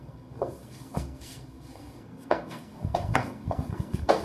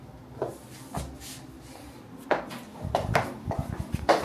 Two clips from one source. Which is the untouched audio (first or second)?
second